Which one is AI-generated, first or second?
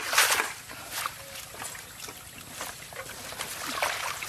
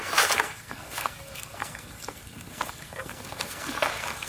second